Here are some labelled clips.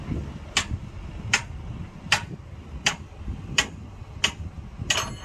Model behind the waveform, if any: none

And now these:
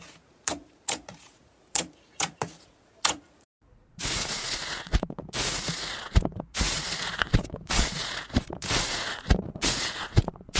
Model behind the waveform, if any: vocoder, Vocos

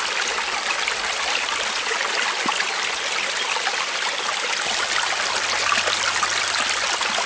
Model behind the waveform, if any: none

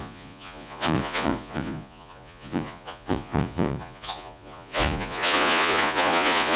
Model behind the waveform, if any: vocoder, Vocos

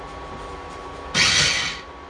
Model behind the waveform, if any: none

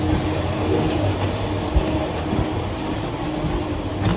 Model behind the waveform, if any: none